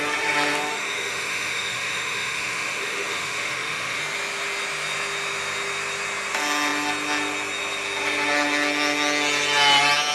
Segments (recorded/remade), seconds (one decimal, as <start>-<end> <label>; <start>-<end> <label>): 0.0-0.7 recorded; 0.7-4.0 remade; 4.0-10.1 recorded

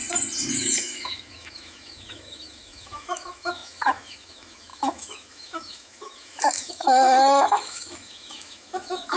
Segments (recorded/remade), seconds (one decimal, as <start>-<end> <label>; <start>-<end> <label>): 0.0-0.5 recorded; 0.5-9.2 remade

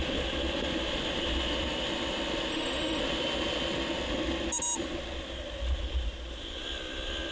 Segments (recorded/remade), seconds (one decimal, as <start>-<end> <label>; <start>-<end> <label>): 0.0-2.5 recorded; 2.5-3.0 remade; 3.0-7.3 recorded

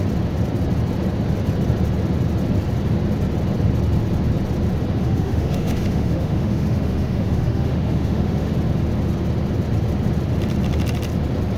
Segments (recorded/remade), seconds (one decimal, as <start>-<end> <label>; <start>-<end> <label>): 0.0-5.0 recorded; 5.0-8.5 remade; 8.5-11.6 recorded

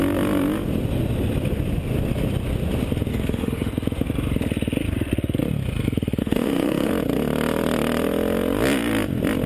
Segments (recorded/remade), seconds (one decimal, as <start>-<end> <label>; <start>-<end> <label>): 0.0-3.1 recorded; 3.1-3.7 remade; 3.7-6.2 recorded; 6.2-6.9 remade; 6.9-9.5 recorded